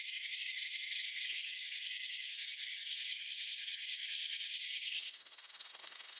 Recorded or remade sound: remade